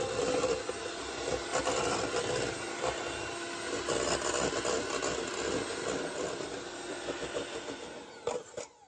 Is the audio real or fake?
real